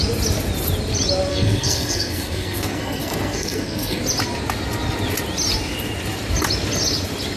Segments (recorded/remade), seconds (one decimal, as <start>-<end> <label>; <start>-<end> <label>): 0.0-1.3 recorded; 1.3-4.0 remade; 4.0-7.4 recorded